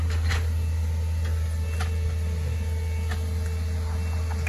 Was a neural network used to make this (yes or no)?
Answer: no